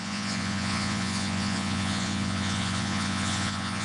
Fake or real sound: fake